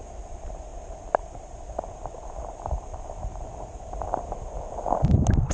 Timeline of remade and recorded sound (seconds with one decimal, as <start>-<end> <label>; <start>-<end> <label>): 0.0-0.7 recorded; 0.7-3.9 remade; 3.9-5.5 recorded